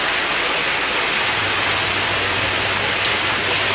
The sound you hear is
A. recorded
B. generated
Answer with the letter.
B